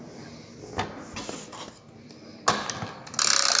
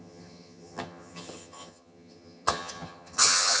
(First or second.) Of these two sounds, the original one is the first